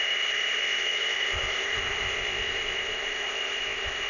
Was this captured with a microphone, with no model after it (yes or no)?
no